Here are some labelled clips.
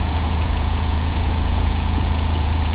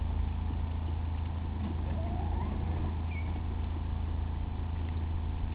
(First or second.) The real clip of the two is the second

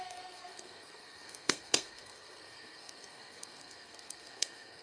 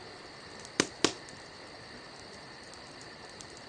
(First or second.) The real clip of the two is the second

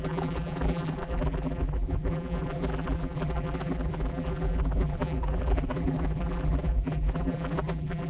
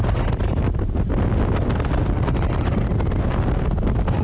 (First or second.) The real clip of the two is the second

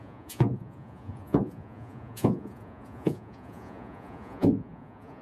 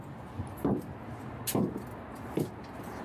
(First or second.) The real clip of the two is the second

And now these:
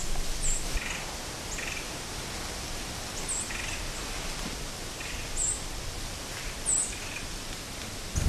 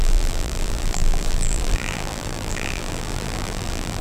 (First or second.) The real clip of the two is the first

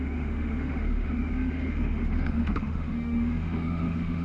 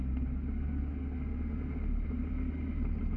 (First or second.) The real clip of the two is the second